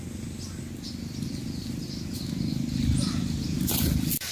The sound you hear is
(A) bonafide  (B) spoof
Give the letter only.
A